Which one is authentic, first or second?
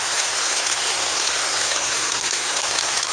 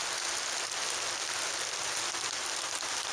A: second